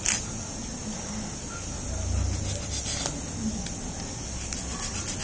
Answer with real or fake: real